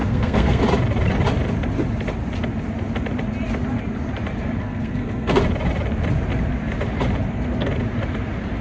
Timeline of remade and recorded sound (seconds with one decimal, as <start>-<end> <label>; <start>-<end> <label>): 0.0-0.6 remade; 0.6-4.6 recorded; 4.6-5.4 remade; 5.4-8.6 recorded